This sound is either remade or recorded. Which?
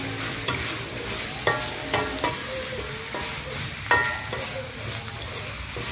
recorded